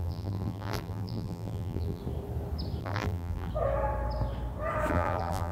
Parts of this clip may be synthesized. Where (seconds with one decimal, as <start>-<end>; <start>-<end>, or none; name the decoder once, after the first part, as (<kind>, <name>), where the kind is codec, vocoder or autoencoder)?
0.0-2.0 (vocoder, BigVGAN v2); 2.8-3.5; 4.9-5.5